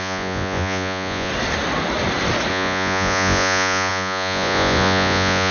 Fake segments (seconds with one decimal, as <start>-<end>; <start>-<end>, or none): 0.0-1.3; 2.5-5.5